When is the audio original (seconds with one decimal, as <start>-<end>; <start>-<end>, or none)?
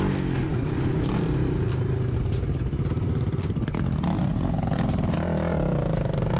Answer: 0.0-6.4